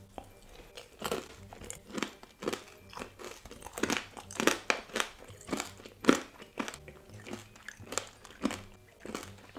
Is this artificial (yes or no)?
no